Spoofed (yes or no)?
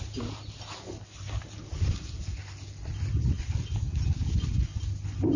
no